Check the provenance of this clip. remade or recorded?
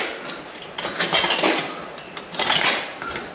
recorded